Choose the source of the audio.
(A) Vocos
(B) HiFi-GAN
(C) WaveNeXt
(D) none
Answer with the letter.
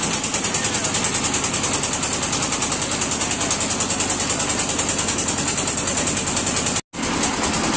D